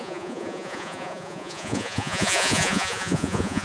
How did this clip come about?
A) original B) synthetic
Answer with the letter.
B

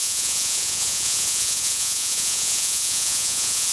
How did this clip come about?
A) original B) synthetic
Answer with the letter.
B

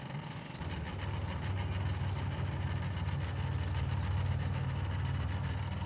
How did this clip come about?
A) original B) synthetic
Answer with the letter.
A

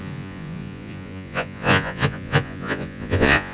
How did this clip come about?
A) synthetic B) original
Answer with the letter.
A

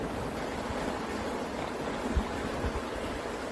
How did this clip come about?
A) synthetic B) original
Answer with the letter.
B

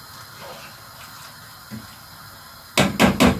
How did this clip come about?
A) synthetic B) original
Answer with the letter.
B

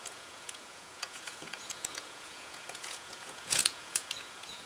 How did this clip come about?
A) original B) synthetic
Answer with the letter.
B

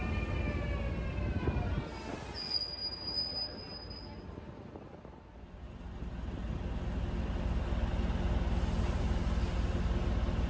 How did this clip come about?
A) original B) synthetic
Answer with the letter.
A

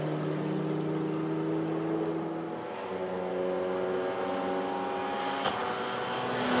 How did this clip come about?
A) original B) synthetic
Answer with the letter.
A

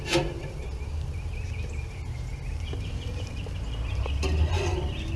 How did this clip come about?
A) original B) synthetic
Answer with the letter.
A